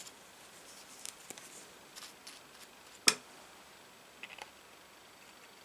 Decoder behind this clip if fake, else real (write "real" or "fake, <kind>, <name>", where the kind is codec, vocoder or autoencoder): real